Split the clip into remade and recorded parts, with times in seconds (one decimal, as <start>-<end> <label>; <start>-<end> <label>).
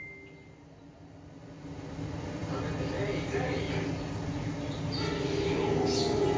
0.0-6.4 recorded